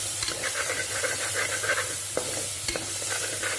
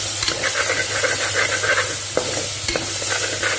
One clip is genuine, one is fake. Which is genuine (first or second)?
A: second